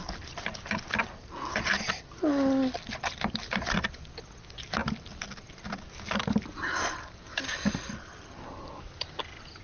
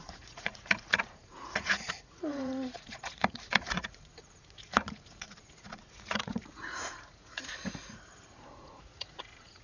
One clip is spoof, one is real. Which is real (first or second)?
first